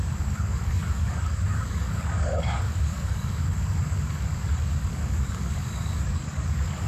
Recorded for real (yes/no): no